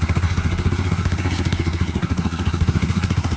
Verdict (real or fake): fake